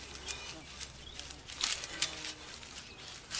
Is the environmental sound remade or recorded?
recorded